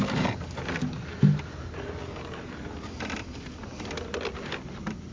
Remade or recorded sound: recorded